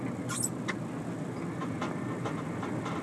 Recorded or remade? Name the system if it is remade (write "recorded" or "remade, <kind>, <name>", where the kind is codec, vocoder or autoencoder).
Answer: recorded